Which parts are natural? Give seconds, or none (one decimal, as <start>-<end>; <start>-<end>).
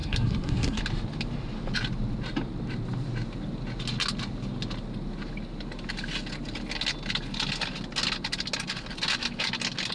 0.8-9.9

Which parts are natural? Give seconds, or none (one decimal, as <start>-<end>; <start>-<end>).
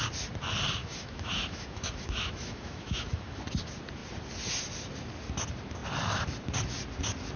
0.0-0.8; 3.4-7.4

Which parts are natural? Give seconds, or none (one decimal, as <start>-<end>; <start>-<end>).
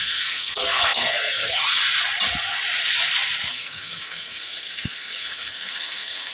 1.6-3.5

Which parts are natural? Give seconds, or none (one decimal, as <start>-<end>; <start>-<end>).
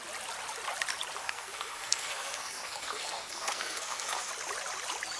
0.0-1.2; 4.3-5.2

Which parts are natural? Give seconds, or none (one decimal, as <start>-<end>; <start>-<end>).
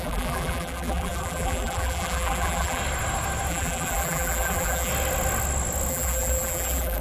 2.8-3.5; 4.9-5.9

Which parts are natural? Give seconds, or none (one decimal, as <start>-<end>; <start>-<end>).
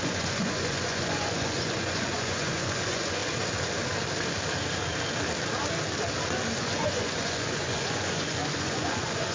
3.2-6.6